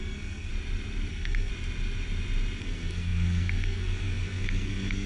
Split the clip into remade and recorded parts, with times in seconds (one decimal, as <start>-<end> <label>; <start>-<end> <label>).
0.0-0.5 remade; 0.5-1.1 recorded; 1.1-1.5 remade; 1.5-2.6 recorded; 2.6-5.1 remade